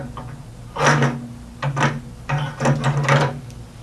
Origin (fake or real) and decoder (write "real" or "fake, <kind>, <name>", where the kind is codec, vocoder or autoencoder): real